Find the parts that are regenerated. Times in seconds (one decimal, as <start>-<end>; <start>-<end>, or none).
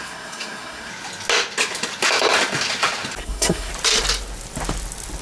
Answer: 0.0-0.9; 3.2-3.7